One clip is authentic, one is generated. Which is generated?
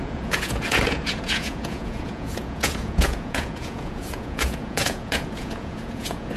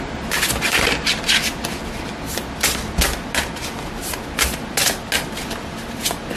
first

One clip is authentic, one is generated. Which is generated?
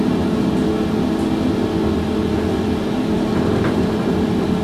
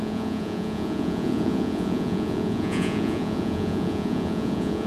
second